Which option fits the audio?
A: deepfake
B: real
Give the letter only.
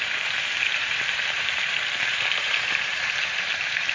A